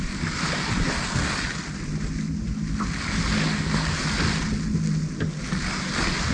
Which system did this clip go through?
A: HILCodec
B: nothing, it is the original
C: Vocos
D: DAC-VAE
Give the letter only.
B